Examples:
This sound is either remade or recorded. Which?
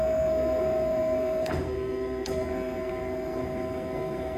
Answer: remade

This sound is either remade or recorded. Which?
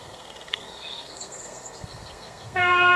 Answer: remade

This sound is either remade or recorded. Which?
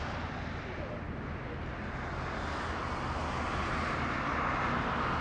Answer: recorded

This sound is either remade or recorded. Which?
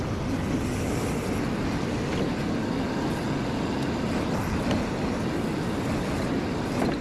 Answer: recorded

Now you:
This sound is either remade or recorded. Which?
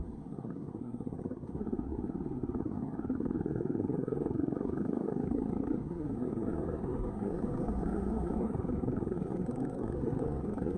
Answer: remade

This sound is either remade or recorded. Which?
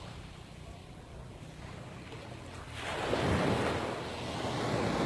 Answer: recorded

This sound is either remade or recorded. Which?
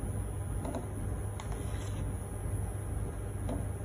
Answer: recorded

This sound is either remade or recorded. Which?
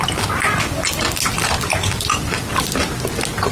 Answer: recorded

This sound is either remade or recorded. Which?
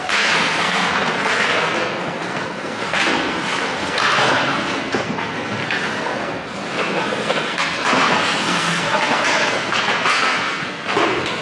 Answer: remade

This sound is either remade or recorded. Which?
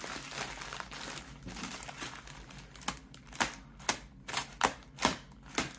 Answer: recorded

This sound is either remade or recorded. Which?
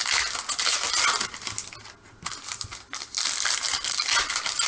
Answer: recorded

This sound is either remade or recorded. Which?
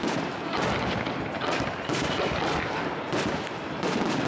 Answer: recorded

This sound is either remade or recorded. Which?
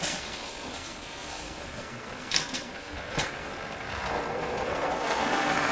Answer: remade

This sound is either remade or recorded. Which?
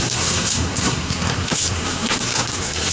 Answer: remade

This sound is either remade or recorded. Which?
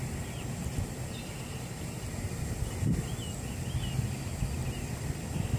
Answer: recorded